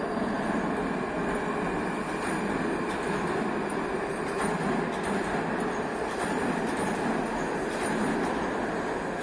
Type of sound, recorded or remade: recorded